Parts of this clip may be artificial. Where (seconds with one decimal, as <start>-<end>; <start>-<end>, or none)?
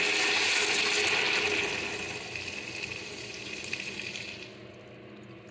3.0-4.5